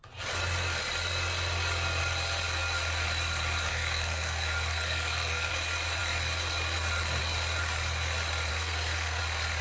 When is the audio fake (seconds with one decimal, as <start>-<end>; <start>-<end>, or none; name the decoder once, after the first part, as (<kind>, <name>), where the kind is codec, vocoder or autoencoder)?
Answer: 3.7-5.5 (codec, SNAC); 8.5-9.2